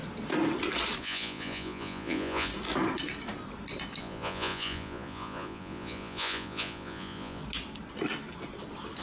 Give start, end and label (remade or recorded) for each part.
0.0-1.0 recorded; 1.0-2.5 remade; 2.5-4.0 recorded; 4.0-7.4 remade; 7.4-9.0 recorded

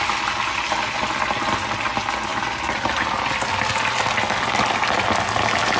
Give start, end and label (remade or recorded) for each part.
0.0-5.8 recorded

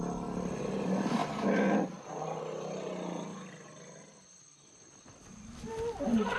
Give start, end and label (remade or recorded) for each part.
0.0-6.4 recorded

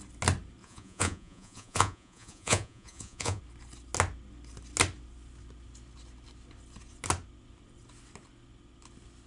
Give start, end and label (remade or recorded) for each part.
0.0-0.6 recorded; 0.6-3.4 remade; 3.4-9.3 recorded